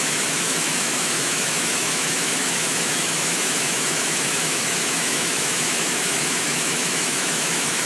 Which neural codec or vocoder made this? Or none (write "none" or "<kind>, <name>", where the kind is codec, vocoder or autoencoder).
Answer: autoencoder, DAC-VAE